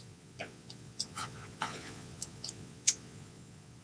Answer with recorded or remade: remade